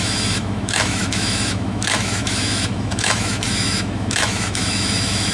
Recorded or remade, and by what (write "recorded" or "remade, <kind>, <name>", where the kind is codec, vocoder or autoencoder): remade, autoencoder, DAC-VAE